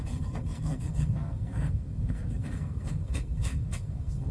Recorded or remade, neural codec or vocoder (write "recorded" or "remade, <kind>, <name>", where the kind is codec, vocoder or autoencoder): remade, codec, SNAC